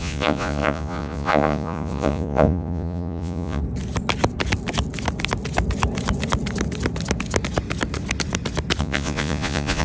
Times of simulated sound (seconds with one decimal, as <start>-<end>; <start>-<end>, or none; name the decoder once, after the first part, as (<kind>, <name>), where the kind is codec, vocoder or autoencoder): 0.0-3.6 (vocoder, Vocos); 8.8-9.8